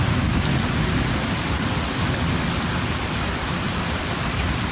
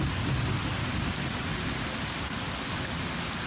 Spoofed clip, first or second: first